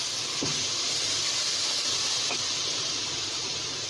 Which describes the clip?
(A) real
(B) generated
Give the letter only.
A